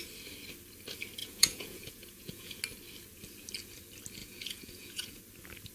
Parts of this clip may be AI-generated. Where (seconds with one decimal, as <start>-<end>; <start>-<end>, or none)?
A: 1.2-2.6; 4.2-5.2